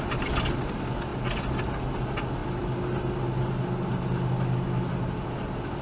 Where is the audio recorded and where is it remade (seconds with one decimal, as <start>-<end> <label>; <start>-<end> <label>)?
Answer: 0.0-5.8 recorded